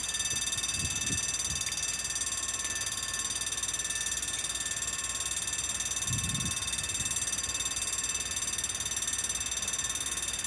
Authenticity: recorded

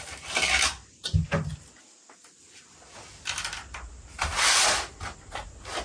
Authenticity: recorded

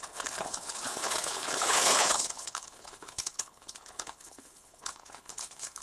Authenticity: remade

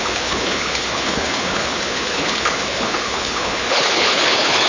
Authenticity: remade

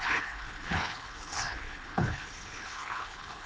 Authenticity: remade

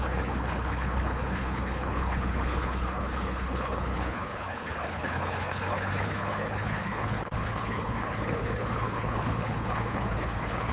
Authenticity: remade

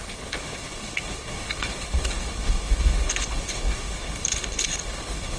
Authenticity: remade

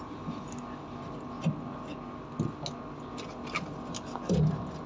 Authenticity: recorded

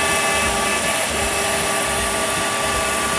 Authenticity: recorded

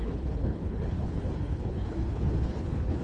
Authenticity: remade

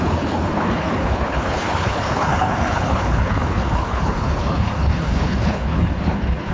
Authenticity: remade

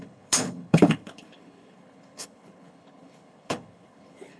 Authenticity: remade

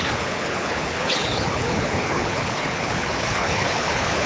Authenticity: remade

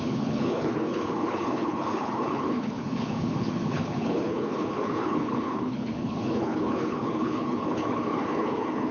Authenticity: remade